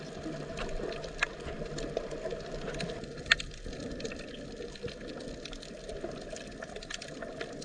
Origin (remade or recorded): recorded